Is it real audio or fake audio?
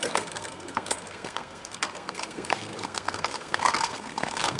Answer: fake